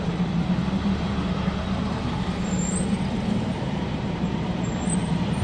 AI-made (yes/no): yes